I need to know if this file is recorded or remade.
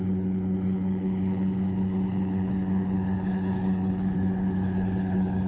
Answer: remade